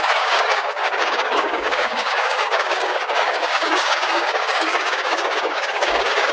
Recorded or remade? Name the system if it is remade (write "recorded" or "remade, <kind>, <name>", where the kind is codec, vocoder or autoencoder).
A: remade, codec, DAC